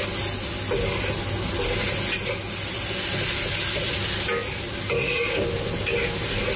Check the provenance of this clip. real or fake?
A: real